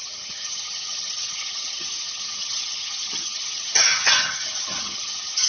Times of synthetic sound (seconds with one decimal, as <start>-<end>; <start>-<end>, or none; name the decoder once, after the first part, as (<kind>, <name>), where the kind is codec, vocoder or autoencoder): 0.0-5.5 (vocoder, HiFi-GAN)